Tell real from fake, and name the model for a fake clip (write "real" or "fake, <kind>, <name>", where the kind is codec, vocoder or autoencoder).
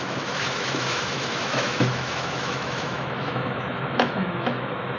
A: fake, autoencoder, DAC-VAE